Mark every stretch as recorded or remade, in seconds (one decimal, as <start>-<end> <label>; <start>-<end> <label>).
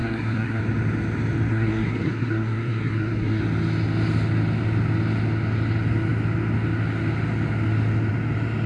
0.0-0.6 remade; 0.6-1.5 recorded; 1.5-3.4 remade; 3.4-8.7 recorded